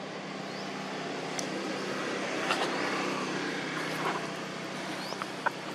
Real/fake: real